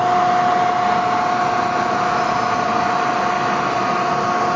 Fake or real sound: real